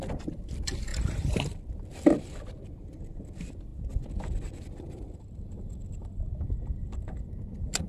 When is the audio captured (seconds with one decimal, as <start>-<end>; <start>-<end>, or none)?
none